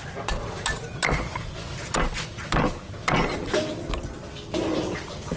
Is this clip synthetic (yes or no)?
no